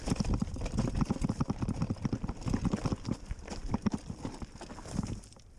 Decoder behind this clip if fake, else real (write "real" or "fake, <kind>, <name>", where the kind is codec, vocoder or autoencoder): real